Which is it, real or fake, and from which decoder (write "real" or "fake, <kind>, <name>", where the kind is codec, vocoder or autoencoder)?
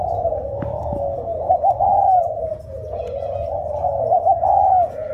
fake, vocoder, Vocos